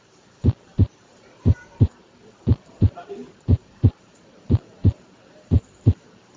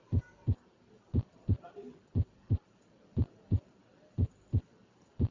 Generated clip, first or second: first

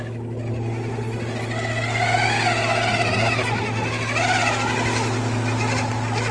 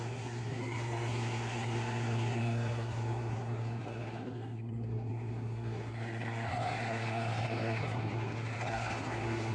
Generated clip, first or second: second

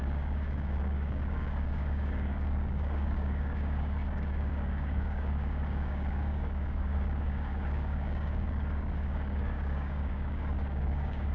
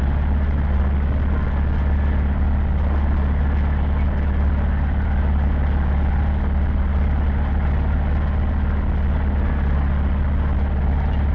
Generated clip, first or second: first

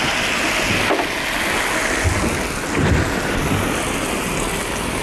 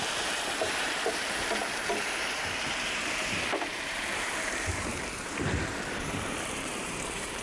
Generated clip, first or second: second